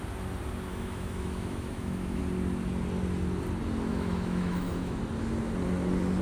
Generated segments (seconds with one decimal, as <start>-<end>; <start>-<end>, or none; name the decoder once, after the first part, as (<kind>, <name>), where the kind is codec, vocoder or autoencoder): 0.7-2.2 (autoencoder, DAC-VAE); 3.9-5.0